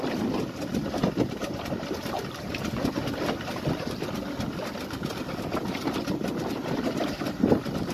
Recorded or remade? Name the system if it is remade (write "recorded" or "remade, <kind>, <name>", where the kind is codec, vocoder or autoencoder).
recorded